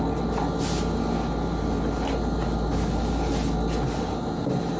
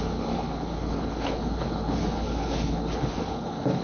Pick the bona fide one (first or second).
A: first